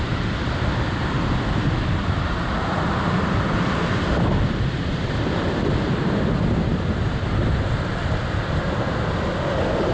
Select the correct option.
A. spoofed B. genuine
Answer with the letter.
B